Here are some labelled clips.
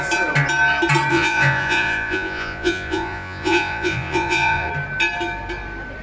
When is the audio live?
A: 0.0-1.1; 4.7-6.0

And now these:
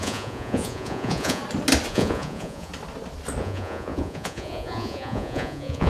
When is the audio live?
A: 1.4-1.9; 2.7-3.4

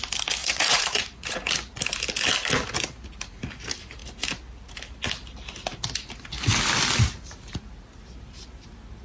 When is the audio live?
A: 0.0-0.4; 1.5-9.0

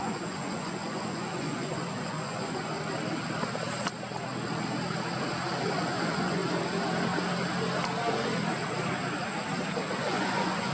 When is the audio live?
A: 2.7-5.7; 6.4-10.0

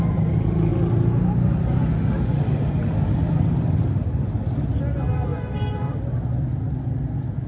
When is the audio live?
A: 0.0-7.5

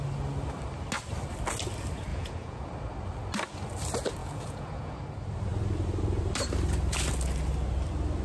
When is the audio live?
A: 0.0-2.1; 2.7-4.2; 5.0-8.2

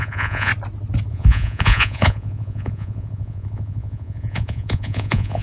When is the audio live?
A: 0.5-1.1

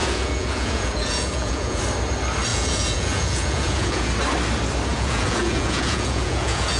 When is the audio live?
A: 1.8-2.5; 4.1-4.9